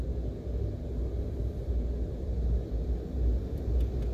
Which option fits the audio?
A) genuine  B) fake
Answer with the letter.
A